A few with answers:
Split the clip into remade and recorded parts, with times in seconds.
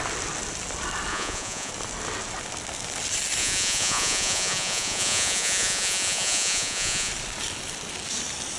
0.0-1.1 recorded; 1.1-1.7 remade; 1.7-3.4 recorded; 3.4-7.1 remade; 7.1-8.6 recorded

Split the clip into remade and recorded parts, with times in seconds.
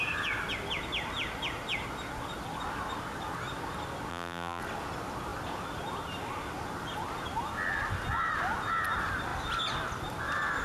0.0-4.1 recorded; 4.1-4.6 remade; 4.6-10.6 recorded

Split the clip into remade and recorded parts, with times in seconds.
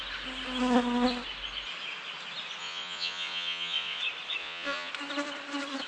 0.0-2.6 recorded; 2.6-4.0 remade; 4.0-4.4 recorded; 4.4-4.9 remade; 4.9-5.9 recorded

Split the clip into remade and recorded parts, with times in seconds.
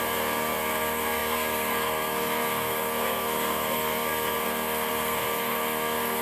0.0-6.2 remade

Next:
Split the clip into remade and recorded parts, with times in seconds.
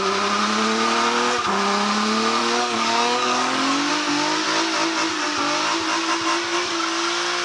0.0-2.4 recorded; 2.4-3.9 remade; 3.9-7.4 recorded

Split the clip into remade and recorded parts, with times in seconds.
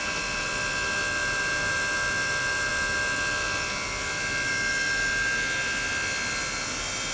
0.0-7.1 recorded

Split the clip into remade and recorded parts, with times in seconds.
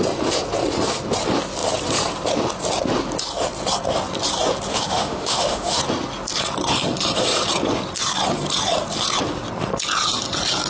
0.0-4.7 recorded; 4.7-5.8 remade; 5.8-10.7 recorded